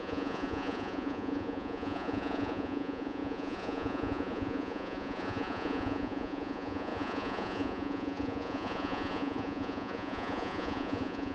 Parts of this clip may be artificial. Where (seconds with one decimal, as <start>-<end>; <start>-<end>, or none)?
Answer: 0.0-11.3